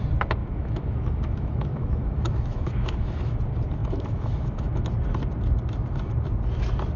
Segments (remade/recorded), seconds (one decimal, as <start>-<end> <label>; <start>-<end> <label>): 0.0-0.4 recorded; 0.4-3.4 remade; 3.4-3.8 recorded; 3.8-4.8 remade; 4.8-7.0 recorded